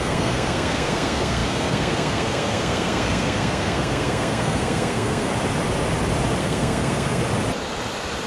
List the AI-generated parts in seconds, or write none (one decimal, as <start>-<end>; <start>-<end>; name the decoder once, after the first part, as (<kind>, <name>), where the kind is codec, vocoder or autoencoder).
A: 0.0-5.3 (codec, SNAC); 6.4-7.2